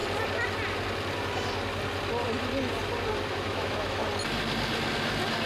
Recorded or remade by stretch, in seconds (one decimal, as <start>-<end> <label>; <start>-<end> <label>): 0.0-3.3 recorded; 3.3-4.0 remade; 4.0-5.5 recorded